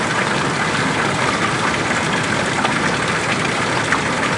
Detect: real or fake real